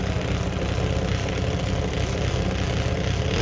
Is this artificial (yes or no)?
no